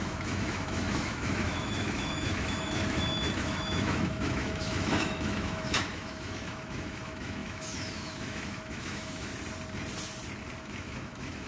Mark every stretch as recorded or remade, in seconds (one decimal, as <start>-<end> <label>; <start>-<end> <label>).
0.0-9.3 remade; 9.3-10.6 recorded; 10.6-11.5 remade